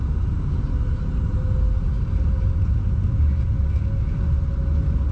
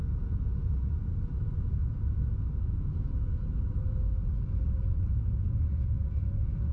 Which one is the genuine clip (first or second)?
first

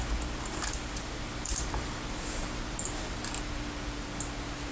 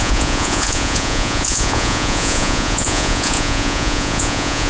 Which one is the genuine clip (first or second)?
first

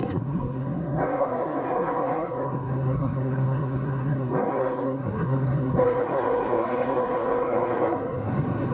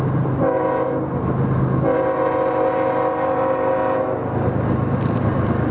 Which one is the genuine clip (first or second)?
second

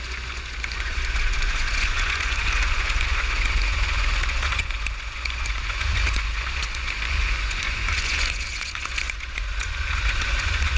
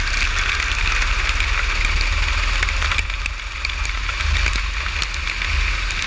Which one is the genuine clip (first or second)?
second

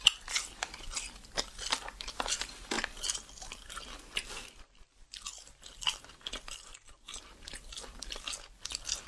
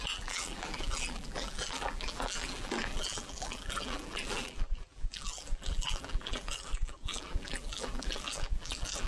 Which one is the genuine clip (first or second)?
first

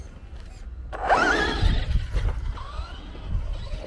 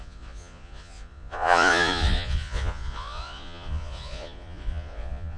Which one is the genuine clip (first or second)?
first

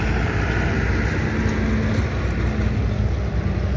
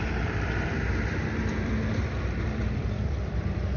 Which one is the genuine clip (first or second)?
first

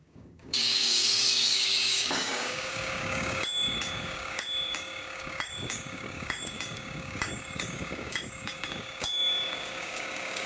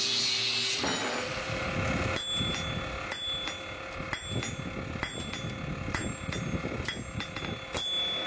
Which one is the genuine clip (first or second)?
second